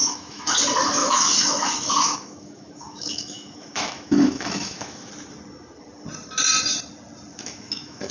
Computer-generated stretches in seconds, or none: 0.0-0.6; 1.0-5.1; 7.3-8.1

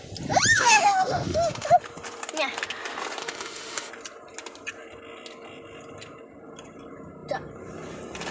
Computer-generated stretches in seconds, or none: 0.5-1.7; 3.2-3.9

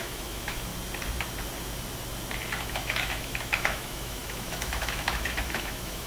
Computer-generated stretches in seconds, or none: 0.0-0.7; 2.6-6.1

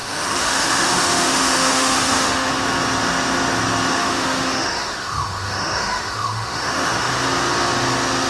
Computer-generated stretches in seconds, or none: 0.0-2.5; 4.0-7.1

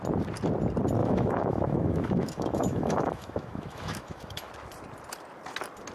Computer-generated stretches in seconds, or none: 1.0-4.5

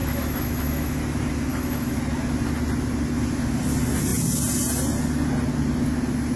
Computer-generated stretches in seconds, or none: 0.0-1.0; 1.5-2.0

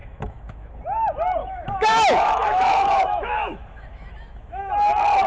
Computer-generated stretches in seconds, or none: 0.0-0.7; 1.4-4.6

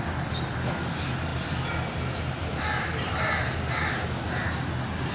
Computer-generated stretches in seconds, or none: none